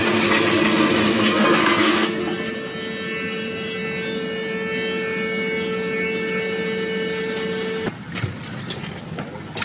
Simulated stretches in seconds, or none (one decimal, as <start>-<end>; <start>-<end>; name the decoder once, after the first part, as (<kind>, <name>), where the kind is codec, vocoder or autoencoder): 1.1-2.2 (codec, SNAC)